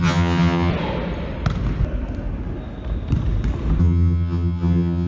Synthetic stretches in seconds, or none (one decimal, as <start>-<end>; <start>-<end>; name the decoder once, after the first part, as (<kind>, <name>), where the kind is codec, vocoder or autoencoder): 0.0-0.7 (vocoder, HiFi-GAN); 3.8-5.1